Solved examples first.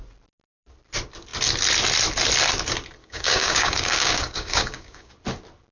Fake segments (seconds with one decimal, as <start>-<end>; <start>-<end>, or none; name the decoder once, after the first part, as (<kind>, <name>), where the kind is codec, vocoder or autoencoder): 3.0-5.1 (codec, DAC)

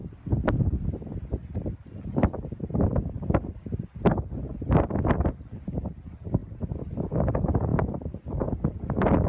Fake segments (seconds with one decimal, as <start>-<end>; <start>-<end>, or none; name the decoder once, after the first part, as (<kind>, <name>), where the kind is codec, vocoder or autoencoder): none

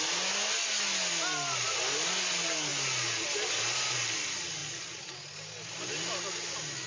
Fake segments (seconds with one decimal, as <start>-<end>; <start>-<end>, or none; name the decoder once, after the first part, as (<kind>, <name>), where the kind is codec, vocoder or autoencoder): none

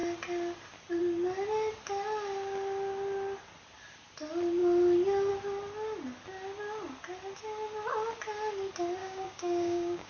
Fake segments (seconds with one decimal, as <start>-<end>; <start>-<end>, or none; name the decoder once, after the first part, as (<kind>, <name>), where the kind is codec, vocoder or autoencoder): 9.0-10.1 (codec, DAC)